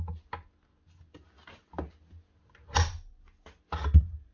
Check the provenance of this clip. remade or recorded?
recorded